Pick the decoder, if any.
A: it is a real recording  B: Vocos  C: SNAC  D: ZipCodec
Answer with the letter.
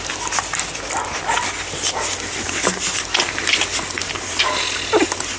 A